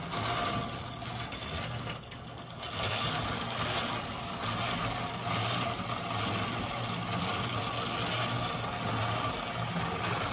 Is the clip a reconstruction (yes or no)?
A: no